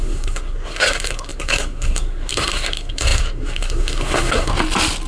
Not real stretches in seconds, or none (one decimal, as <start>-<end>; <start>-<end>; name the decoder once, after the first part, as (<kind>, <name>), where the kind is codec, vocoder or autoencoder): 0.0-4.5 (codec, SNAC)